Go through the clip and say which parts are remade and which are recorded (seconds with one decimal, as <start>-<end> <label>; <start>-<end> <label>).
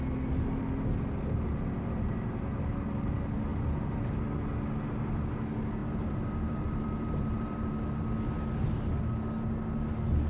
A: 0.0-5.8 recorded; 5.8-7.8 remade; 7.8-10.3 recorded